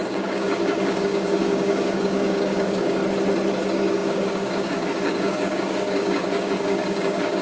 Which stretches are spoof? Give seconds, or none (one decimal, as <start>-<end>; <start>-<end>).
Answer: 0.0-3.0; 3.6-7.4